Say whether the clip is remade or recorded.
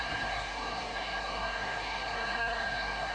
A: remade